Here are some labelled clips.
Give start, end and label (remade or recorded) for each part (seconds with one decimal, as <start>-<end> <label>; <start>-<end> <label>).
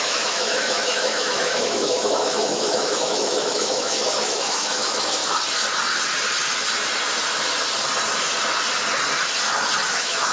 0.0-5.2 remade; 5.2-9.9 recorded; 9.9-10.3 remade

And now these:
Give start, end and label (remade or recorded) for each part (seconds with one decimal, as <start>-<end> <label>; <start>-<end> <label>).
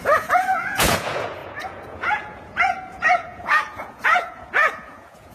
0.0-5.3 remade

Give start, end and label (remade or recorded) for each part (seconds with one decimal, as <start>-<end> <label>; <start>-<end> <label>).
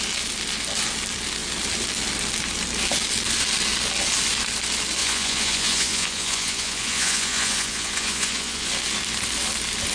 0.0-5.0 recorded; 5.0-8.7 remade; 8.7-9.9 recorded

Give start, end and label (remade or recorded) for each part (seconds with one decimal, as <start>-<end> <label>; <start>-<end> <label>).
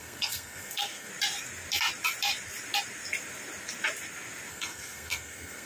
0.0-1.1 remade; 1.1-4.5 recorded; 4.5-5.7 remade